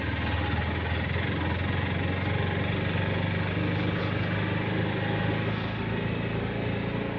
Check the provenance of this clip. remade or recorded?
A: recorded